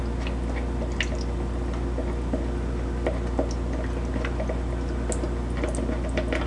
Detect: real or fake real